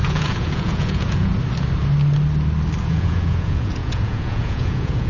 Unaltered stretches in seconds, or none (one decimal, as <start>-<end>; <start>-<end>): 1.3-2.8